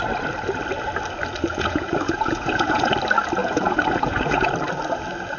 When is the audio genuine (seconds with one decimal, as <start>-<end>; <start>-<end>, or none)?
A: 0.0-1.5; 2.9-3.4; 4.5-5.4

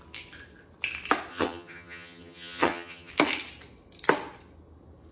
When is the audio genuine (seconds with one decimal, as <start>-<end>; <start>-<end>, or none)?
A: 0.0-1.3; 3.1-5.1

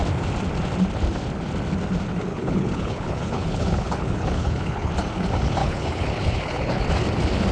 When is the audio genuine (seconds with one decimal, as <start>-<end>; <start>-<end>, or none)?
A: 0.0-2.3; 4.9-5.6; 6.8-7.5

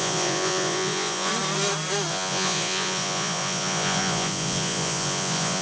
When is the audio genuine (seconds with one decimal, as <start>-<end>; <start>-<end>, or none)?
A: 1.3-2.1